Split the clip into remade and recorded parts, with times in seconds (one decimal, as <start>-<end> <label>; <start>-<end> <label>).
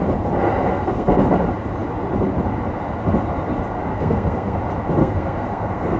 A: 0.0-0.7 recorded; 0.7-1.2 remade; 1.2-3.9 recorded; 3.9-4.6 remade; 4.6-5.0 recorded; 5.0-6.0 remade